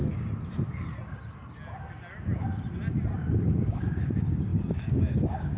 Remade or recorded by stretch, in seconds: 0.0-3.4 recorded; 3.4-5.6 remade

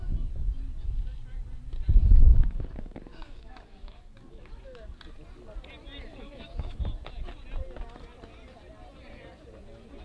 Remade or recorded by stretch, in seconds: 0.0-2.3 recorded; 2.3-5.0 remade; 5.0-6.1 recorded; 6.1-6.8 remade; 6.8-10.0 recorded

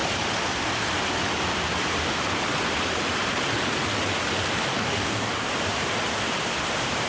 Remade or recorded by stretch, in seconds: 0.0-4.7 recorded; 4.7-5.5 remade; 5.5-7.1 recorded

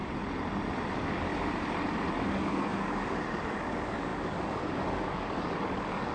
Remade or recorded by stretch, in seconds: 0.0-0.9 recorded; 0.9-1.3 remade; 1.3-2.2 recorded; 2.2-6.1 remade